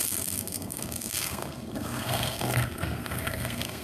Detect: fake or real fake